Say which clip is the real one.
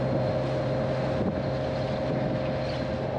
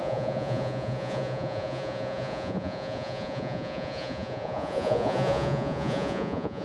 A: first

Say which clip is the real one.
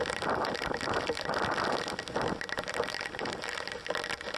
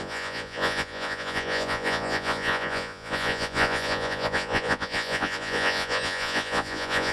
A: first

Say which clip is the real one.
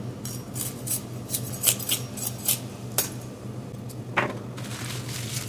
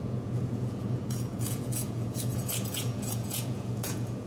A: first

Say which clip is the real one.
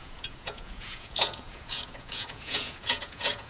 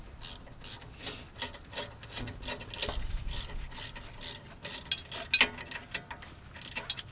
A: second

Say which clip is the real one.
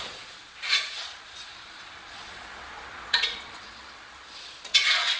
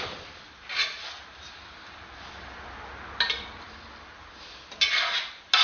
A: second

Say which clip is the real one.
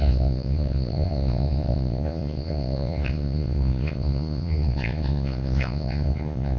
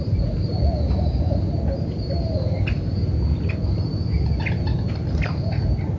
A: second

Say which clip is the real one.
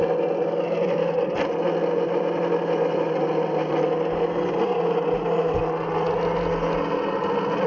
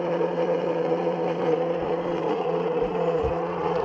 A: first